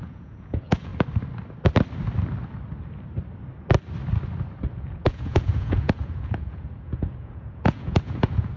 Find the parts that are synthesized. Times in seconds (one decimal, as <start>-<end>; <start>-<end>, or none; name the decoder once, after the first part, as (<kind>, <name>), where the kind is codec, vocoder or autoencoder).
0.0-0.9 (vocoder, Vocos); 4.7-8.6